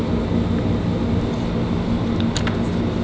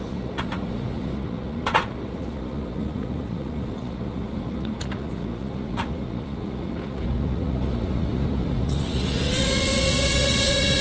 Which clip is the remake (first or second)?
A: second